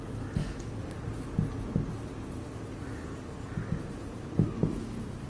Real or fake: real